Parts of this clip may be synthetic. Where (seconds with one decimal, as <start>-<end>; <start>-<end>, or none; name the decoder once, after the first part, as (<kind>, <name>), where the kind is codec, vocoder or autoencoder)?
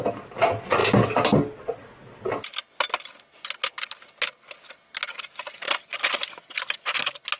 none